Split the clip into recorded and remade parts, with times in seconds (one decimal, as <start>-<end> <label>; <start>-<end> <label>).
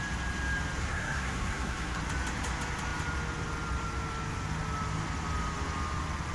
0.0-0.8 recorded; 0.8-2.0 remade; 2.0-6.3 recorded